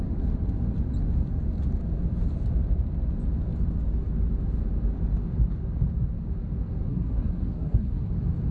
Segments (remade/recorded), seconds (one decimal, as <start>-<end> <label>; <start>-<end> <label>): 0.0-6.9 recorded; 6.9-8.1 remade; 8.1-8.5 recorded